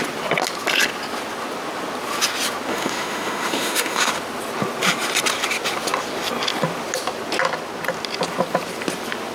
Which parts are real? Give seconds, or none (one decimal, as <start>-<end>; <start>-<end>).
0.0-2.7; 4.1-9.3